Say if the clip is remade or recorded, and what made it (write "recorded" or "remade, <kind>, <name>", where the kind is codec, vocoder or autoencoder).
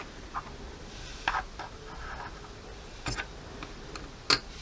recorded